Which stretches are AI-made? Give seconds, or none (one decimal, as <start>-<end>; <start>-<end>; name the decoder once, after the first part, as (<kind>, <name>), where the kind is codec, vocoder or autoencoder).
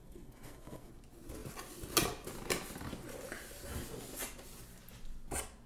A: 0.0-0.9 (codec, SNAC)